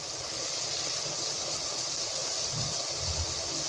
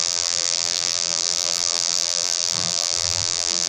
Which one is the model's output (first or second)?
second